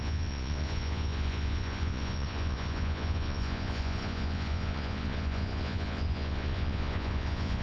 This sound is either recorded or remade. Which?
remade